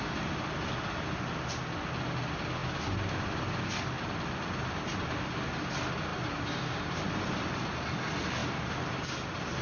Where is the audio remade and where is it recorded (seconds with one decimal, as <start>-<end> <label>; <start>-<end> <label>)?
0.0-6.1 recorded; 6.1-7.1 remade; 7.1-8.4 recorded; 8.4-9.1 remade; 9.1-9.6 recorded